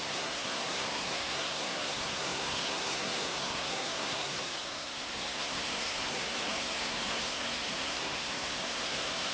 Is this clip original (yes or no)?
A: no